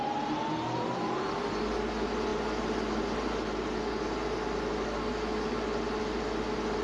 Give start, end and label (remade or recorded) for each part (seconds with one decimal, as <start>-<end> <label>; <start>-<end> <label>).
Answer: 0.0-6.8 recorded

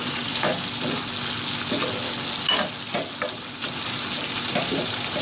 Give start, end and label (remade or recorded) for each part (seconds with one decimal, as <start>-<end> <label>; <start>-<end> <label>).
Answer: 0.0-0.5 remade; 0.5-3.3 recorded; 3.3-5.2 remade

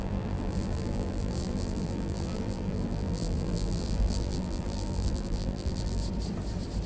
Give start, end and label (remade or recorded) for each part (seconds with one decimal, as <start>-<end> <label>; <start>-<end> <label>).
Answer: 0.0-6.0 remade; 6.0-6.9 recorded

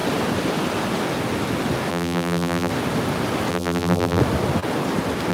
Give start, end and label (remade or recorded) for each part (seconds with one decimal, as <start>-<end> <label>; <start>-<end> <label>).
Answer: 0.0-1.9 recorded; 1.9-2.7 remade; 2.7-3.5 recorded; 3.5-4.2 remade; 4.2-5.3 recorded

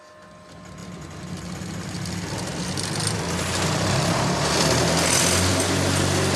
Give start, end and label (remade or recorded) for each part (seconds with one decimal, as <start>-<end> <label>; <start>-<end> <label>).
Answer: 0.0-6.4 recorded

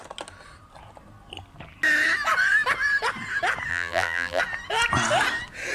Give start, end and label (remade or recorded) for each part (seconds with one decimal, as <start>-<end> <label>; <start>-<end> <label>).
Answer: 0.0-3.7 recorded; 3.7-4.4 remade; 4.4-5.7 recorded

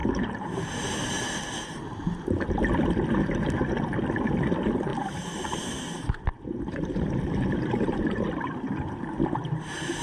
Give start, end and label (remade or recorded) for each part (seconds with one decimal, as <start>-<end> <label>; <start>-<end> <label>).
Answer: 0.0-2.5 remade; 2.5-4.9 recorded; 4.9-8.7 remade; 8.7-10.0 recorded

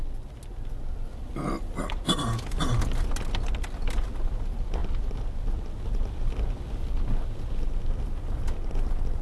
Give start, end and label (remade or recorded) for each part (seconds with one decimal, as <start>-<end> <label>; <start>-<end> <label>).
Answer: 0.0-1.1 recorded; 1.1-3.1 remade; 3.1-9.2 recorded